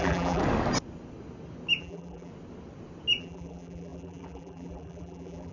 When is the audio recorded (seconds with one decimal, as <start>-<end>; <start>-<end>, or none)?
0.4-1.8; 2.3-3.2